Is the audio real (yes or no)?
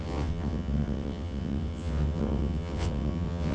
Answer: no